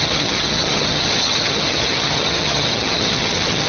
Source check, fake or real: fake